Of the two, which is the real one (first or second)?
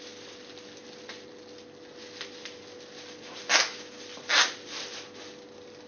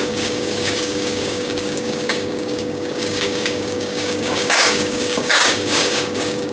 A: first